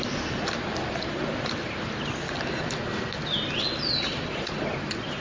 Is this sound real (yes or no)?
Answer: yes